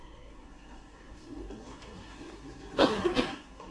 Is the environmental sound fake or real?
fake